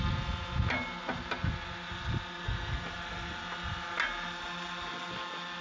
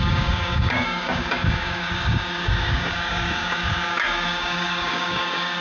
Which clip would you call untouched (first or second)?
first